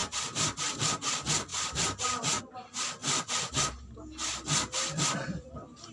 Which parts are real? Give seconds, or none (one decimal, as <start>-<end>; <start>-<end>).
0.0-1.5; 2.4-5.9